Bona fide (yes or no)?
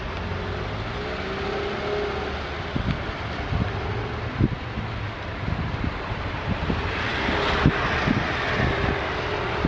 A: yes